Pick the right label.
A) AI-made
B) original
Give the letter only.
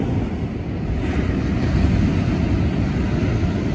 B